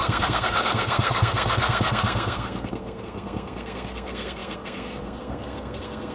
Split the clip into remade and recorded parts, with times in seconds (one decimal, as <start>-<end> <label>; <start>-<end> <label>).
0.0-6.1 remade